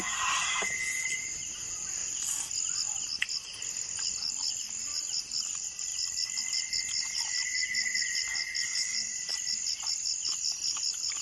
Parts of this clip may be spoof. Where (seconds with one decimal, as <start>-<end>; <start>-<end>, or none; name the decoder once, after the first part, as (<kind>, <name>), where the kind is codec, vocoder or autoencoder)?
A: 8.7-9.3 (vocoder, BigVGAN v2)